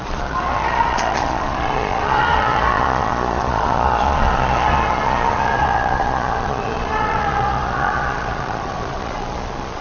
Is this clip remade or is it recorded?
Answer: remade